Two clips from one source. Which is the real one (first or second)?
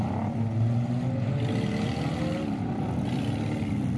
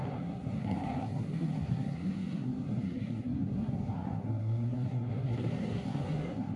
first